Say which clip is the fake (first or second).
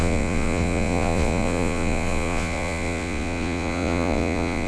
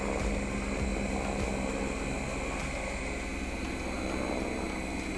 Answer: first